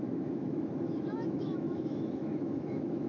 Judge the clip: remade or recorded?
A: remade